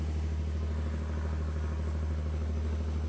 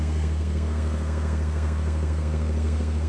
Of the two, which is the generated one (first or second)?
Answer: second